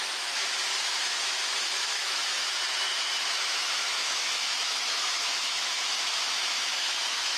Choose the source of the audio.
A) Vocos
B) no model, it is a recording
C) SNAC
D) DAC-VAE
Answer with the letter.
D